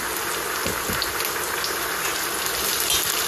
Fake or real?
real